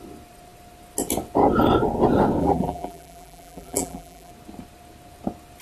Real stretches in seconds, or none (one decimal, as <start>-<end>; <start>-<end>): 0.0-2.4; 4.3-5.6